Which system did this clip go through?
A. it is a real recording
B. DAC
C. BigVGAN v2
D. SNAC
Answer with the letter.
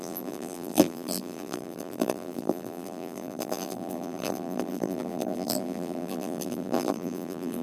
C